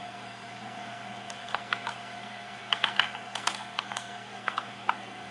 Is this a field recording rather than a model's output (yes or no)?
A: no